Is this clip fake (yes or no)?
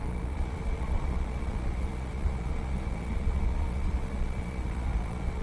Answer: yes